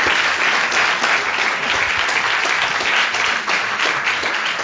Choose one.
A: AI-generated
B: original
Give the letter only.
B